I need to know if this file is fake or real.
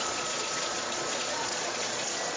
fake